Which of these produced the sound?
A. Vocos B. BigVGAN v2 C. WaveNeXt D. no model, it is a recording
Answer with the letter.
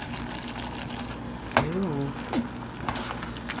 D